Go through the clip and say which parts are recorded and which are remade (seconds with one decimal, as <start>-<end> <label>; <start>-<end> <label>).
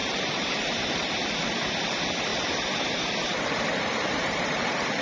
0.0-1.3 remade; 1.3-2.3 recorded; 2.3-5.0 remade